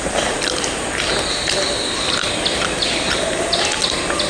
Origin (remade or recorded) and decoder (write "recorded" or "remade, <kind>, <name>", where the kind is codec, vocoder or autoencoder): recorded